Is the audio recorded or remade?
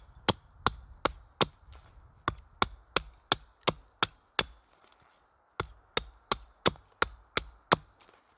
recorded